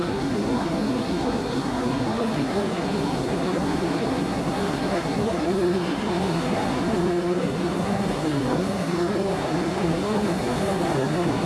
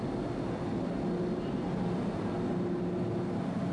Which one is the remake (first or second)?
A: first